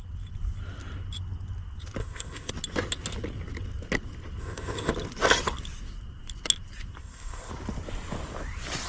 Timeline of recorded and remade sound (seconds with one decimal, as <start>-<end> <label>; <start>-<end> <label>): 0.0-2.0 recorded; 2.0-2.5 remade; 2.5-4.4 recorded; 4.4-4.9 remade; 4.9-7.0 recorded; 7.0-7.5 remade; 7.5-8.9 recorded